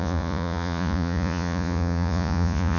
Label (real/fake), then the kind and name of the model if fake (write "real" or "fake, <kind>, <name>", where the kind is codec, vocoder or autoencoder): fake, vocoder, Vocos